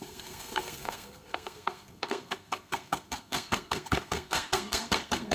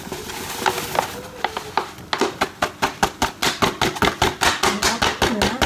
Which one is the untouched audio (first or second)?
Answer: second